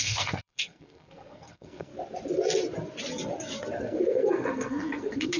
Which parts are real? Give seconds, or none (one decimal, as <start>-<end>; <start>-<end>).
1.9-3.8

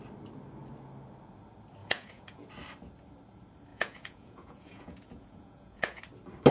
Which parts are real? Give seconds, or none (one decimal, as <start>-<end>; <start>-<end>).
0.0-1.8; 2.5-3.7; 6.0-6.5